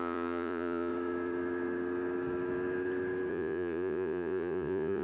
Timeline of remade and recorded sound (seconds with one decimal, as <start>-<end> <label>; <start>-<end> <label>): 0.0-0.9 remade; 0.9-3.3 recorded; 3.3-5.0 remade